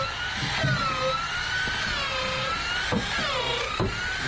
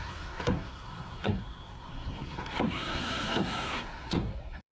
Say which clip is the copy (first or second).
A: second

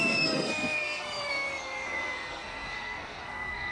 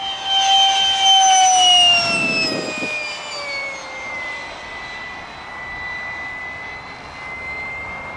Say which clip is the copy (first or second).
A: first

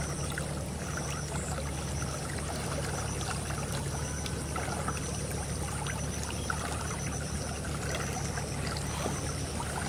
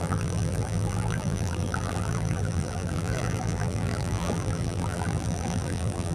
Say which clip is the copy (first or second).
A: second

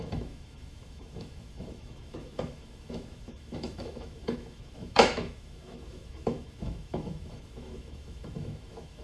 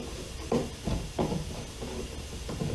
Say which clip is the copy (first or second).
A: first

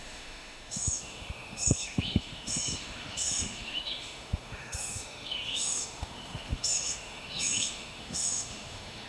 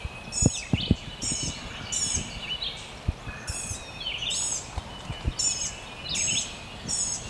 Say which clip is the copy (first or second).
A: first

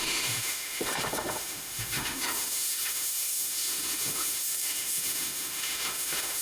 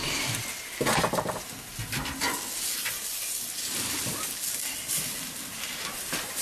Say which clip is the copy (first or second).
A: first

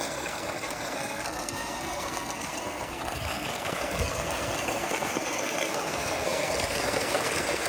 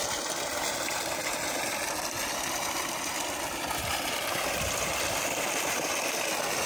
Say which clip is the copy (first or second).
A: first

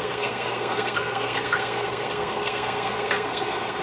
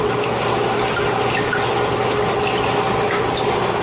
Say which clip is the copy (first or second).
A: first